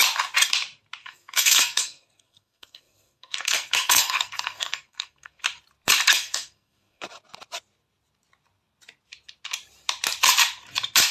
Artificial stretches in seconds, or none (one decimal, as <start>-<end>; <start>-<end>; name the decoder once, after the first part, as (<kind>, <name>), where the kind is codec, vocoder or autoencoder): 1.0-5.4 (codec, SNAC); 6.1-7.0